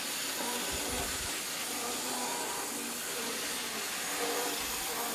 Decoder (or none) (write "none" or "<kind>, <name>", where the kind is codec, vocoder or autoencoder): none